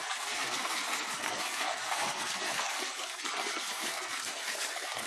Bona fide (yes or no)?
no